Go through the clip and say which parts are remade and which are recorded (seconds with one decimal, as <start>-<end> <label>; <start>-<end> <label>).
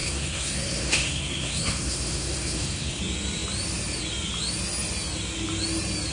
0.0-3.0 remade; 3.0-6.1 recorded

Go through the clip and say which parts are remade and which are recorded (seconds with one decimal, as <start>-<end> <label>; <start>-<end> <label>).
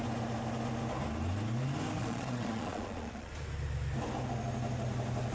0.0-2.0 recorded; 2.0-3.3 remade; 3.3-5.3 recorded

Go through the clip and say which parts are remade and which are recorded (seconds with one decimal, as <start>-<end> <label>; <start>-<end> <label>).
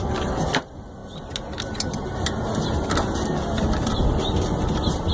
0.0-5.1 recorded